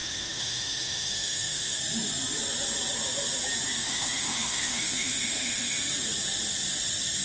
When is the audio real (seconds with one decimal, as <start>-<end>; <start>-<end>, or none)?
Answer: 1.8-3.8; 5.8-7.2